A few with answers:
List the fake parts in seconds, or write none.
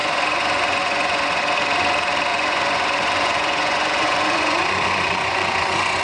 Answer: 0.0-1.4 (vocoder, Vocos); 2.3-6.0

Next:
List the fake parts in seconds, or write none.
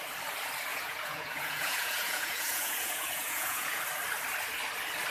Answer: 0.7-3.8 (vocoder, Vocos)